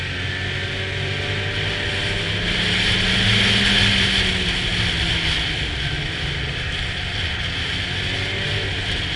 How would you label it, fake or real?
real